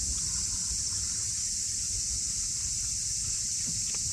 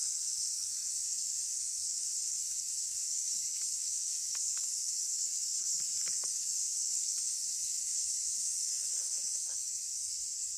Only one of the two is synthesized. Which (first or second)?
second